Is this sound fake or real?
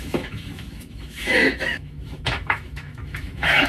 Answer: fake